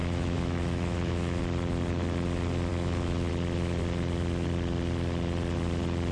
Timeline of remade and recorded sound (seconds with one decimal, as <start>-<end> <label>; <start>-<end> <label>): 0.0-1.4 remade; 1.4-2.7 recorded; 2.7-3.3 remade; 3.3-6.1 recorded

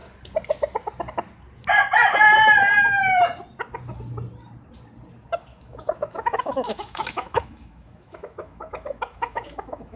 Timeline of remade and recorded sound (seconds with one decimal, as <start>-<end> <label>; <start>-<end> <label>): 0.0-5.5 recorded; 5.5-10.0 remade

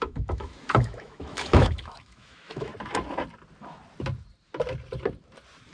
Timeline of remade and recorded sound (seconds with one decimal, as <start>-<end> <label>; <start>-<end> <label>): 0.0-2.7 remade; 2.7-5.7 recorded

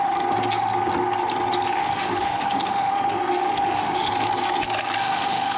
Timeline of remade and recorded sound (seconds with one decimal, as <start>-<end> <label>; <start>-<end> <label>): 0.0-1.8 recorded; 1.8-4.1 remade; 4.1-5.0 recorded; 5.0-5.6 remade